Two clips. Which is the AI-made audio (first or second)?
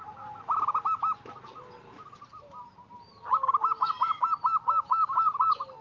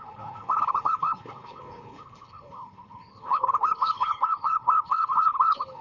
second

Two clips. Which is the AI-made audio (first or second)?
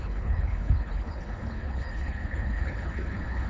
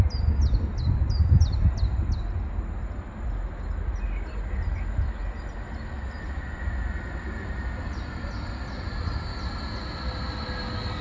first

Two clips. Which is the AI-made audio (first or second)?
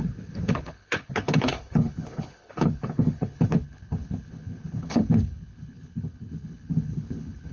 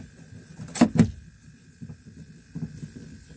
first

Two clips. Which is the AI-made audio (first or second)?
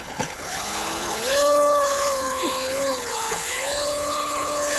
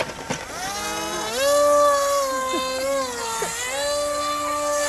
first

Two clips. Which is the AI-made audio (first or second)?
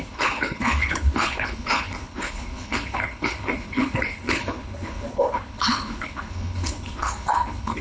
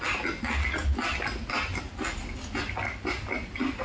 first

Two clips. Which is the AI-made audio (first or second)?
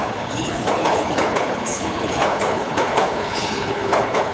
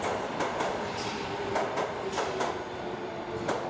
first